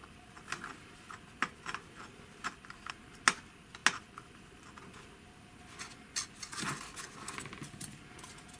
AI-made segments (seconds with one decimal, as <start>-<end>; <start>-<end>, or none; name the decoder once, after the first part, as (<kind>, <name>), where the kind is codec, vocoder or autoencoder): none